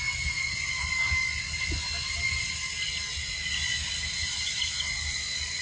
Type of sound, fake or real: real